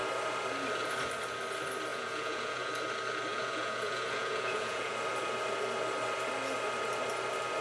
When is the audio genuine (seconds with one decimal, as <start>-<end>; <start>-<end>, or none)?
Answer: 0.0-1.9; 2.7-3.3; 4.9-7.6